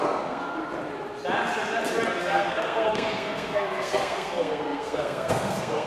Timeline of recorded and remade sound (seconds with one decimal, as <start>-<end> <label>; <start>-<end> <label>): 0.0-0.6 remade; 0.6-2.2 recorded; 2.2-5.9 remade